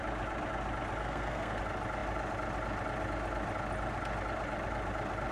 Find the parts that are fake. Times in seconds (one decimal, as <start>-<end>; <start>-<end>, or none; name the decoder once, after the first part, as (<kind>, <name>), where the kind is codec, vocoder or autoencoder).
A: 1.0-1.6 (codec, SNAC)